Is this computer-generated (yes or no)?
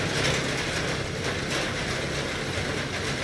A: no